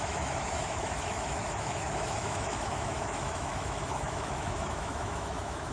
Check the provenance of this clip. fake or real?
fake